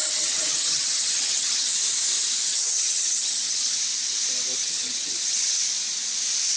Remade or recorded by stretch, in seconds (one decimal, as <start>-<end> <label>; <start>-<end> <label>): 0.0-1.7 remade; 1.7-2.5 recorded; 2.5-3.8 remade; 3.8-4.6 recorded; 4.6-5.6 remade; 5.6-6.6 recorded

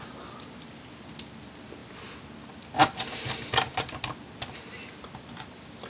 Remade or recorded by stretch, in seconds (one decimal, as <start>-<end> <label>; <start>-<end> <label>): 0.0-5.9 recorded

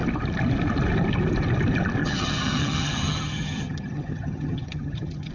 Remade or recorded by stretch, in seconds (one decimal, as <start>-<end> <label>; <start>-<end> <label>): 0.0-2.0 recorded; 2.0-5.3 remade

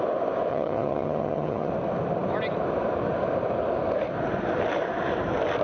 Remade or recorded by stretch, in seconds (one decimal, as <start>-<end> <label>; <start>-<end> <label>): 0.0-0.5 recorded; 0.5-1.7 remade; 1.7-5.6 recorded

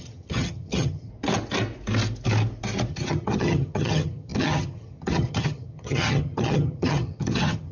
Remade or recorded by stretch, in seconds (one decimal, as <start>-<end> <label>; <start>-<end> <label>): 0.0-1.1 remade; 1.1-2.9 recorded; 2.9-7.7 remade

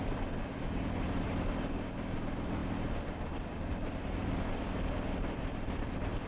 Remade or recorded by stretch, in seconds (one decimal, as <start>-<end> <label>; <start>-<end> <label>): 0.0-6.3 recorded

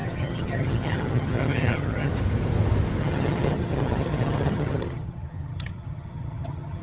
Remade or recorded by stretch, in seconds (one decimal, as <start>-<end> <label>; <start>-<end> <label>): 0.0-2.1 remade; 2.1-3.0 recorded; 3.0-6.8 remade